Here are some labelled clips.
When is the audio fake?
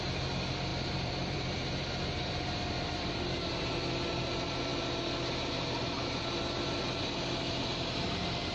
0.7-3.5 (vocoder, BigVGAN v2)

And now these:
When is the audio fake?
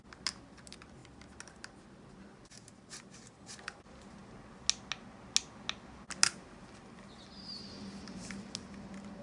none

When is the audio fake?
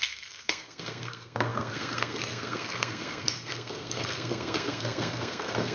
0.0-5.7 (codec, SNAC)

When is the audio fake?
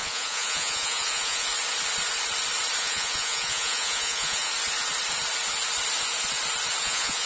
0.0-1.5 (vocoder, Vocos); 2.8-4.5; 6.8-7.3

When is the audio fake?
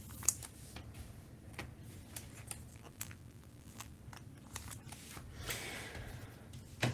2.7-4.0 (vocoder, BigVGAN v2)